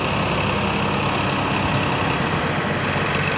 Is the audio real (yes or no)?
yes